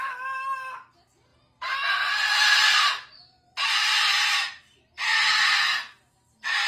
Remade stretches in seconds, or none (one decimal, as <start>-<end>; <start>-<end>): 1.3-1.9; 5.1-6.7